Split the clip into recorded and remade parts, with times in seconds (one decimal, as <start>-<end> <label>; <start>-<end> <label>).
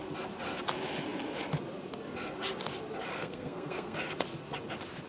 0.0-3.1 recorded; 3.1-4.0 remade; 4.0-5.1 recorded